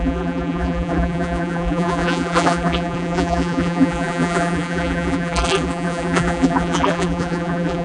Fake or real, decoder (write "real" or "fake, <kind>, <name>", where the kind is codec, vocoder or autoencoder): fake, vocoder, BigVGAN v2